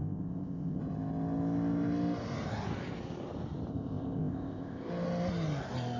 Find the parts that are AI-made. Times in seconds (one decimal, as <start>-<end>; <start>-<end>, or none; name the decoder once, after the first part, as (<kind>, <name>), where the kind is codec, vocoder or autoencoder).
0.0-0.8 (codec, ZipCodec); 3.7-4.9